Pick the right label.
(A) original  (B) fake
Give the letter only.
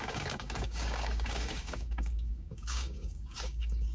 B